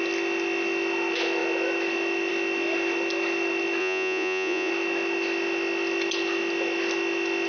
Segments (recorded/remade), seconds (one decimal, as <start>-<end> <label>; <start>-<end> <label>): 0.0-3.8 recorded; 3.8-4.7 remade; 4.7-7.5 recorded